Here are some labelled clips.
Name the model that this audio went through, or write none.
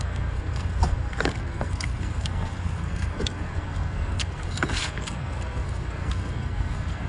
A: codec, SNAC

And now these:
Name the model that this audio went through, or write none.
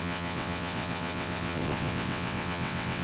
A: vocoder, WaveNeXt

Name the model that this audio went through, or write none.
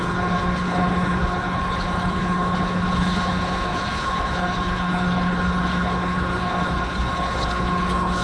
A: codec, HILCodec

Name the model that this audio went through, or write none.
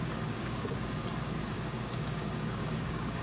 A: codec, DAC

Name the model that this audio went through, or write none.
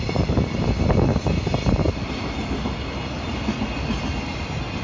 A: none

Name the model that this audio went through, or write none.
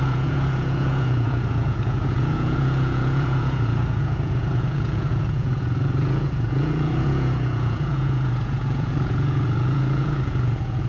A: vocoder, Vocos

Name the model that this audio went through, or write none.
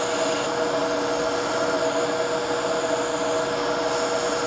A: none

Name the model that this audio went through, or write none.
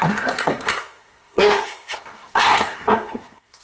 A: codec, SNAC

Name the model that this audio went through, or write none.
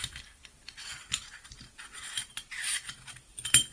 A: none